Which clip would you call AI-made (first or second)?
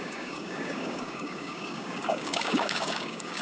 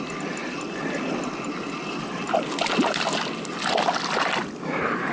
first